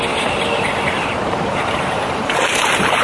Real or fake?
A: fake